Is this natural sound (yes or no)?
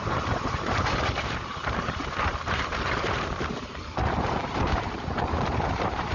no